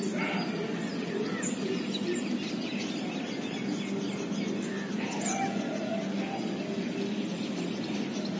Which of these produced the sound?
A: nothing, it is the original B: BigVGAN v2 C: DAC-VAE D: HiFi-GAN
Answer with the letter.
A